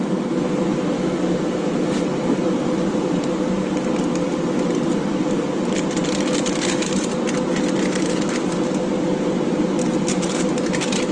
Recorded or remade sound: recorded